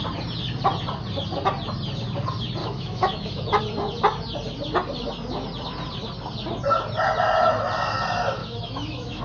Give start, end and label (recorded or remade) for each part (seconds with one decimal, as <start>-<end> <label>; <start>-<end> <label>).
0.0-2.6 recorded; 2.6-3.6 remade; 3.6-8.4 recorded; 8.4-9.2 remade